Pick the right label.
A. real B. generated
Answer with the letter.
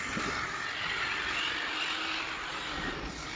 A